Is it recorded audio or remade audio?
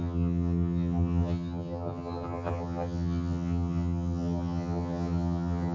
remade